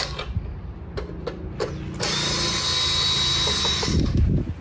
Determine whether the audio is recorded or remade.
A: recorded